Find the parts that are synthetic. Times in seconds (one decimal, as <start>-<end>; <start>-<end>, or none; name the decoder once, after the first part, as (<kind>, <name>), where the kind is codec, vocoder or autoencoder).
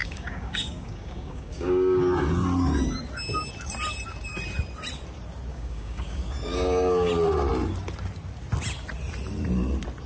0.0-2.0 (codec, DAC); 5.5-7.1